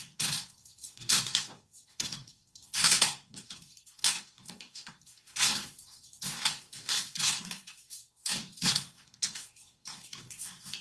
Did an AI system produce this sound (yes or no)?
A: yes